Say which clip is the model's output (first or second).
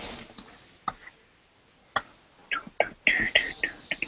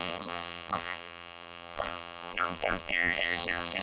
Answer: second